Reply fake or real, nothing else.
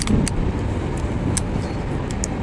real